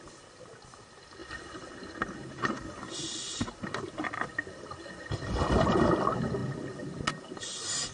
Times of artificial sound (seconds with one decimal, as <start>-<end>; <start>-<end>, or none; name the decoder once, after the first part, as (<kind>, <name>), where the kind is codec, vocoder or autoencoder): none

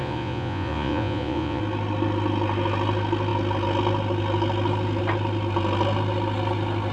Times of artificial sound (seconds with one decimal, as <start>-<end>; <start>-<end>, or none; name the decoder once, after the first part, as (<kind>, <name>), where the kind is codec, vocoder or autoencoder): 0.0-1.6 (vocoder, Vocos)

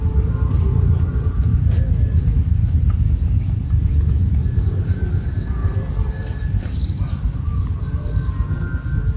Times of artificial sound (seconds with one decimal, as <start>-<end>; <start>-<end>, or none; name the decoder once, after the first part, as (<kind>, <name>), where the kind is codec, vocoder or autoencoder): none

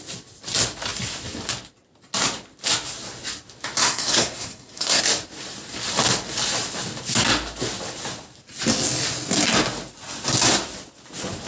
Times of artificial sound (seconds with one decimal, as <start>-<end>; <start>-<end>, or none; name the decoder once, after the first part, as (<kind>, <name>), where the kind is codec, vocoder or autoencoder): 3.8-5.0 (codec, SNAC)

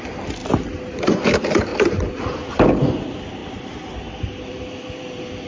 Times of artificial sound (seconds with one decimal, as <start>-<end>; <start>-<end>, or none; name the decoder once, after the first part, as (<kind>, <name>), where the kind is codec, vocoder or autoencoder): 0.0-0.4 (vocoder, BigVGAN v2); 1.0-5.5

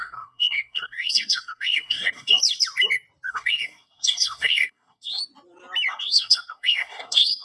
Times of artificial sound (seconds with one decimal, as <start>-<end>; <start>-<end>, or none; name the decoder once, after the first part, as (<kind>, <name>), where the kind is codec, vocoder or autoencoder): 0.0-2.4 (codec, SNAC); 3.3-5.2; 5.9-7.4

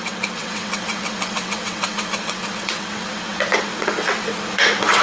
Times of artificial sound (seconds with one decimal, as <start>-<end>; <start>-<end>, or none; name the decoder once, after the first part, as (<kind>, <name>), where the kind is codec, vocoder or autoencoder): 0.0-5.0 (vocoder, WaveNeXt)